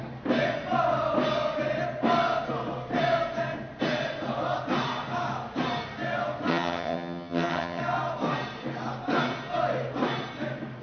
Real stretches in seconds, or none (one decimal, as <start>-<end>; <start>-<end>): 0.0-6.5; 7.8-10.8